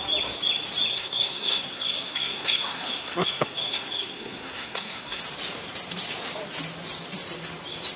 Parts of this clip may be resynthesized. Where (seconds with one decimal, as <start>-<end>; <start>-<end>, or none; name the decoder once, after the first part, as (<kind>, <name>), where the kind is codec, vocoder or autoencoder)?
0.9-5.2 (codec, SNAC)